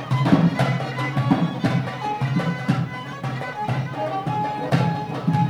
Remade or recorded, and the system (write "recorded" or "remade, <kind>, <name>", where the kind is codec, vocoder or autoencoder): remade, vocoder, BigVGAN v2